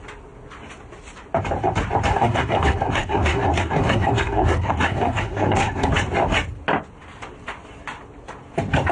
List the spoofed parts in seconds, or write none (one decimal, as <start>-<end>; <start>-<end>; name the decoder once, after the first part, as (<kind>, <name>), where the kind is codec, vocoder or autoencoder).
2.1-5.9 (codec, SNAC)